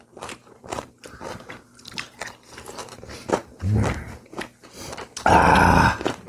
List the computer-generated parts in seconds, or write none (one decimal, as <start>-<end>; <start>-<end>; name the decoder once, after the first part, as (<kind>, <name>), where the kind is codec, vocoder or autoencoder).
0.0-3.4 (vocoder, BigVGAN v2); 5.7-6.3